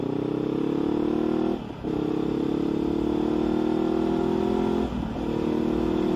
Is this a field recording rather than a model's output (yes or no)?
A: yes